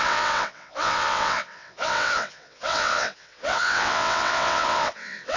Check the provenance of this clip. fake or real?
fake